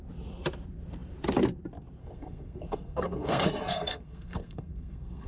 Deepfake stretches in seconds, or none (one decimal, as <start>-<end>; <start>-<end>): 2.0-5.3